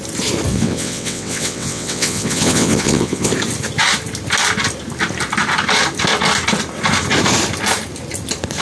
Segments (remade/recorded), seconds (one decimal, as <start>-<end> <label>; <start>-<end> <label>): 0.0-0.5 recorded; 0.5-3.3 remade; 3.3-8.6 recorded